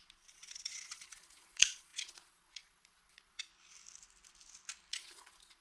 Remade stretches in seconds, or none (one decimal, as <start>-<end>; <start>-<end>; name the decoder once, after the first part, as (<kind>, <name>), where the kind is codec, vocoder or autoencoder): 0.0-3.5 (vocoder, Vocos); 4.9-5.6